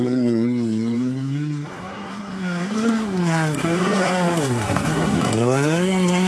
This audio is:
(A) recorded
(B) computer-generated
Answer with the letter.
B